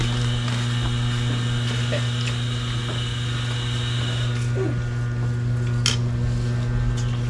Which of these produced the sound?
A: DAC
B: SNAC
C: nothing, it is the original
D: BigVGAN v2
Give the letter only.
C